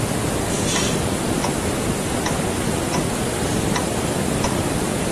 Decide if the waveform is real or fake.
real